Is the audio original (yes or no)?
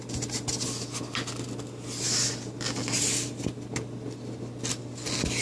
yes